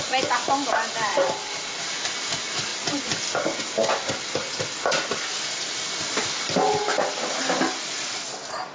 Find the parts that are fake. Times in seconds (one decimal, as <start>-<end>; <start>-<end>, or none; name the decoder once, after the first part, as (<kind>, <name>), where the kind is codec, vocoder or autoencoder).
1.1-1.8 (vocoder, BigVGAN v2)